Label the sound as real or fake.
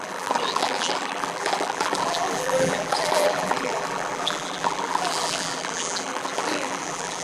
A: fake